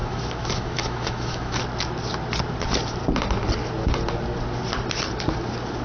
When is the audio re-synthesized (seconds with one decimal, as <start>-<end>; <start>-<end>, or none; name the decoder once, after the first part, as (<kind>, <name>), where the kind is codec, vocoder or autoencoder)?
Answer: 0.0-1.6 (autoencoder, DAC-VAE)